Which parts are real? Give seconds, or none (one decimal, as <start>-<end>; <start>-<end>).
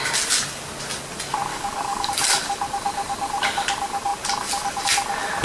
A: 0.0-1.5; 2.1-5.4